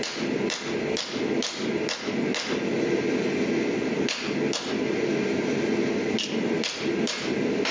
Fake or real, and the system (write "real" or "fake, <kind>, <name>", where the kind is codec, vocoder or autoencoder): real